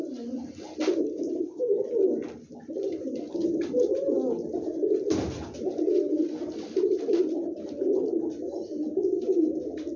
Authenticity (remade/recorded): recorded